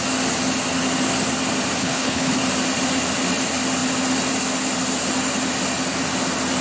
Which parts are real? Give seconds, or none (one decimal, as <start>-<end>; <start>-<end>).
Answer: 0.0-1.8; 2.4-6.6